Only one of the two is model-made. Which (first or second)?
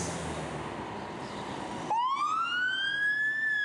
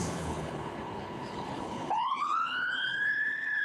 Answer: second